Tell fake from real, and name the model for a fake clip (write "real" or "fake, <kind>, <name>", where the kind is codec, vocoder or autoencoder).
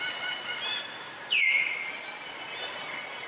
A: real